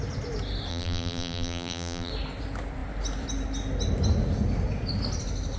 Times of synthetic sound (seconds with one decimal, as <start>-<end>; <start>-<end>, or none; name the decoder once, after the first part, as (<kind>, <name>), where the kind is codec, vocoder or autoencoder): 0.7-2.1 (vocoder, BigVGAN v2)